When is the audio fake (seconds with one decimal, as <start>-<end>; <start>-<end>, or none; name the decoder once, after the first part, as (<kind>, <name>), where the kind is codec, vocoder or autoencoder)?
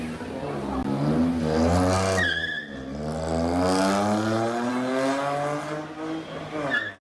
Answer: none